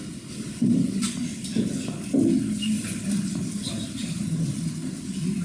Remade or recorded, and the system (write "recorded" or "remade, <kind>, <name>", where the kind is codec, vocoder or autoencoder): recorded